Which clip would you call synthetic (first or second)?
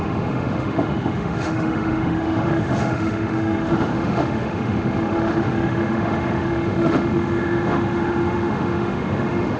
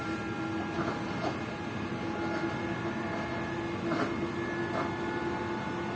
first